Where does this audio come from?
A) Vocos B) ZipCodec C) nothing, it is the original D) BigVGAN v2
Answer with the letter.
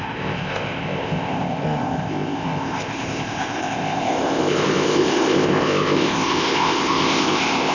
B